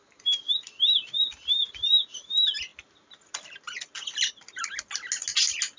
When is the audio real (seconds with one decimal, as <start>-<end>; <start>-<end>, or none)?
0.0-5.8